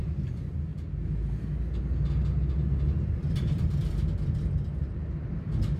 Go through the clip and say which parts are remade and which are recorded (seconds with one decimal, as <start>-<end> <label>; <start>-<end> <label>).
0.0-5.8 recorded

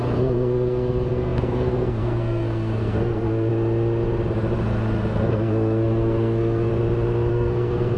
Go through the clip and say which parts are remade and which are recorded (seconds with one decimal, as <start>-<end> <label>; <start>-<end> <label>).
0.0-3.5 remade; 3.5-5.3 recorded; 5.3-6.7 remade; 6.7-7.3 recorded; 7.3-8.0 remade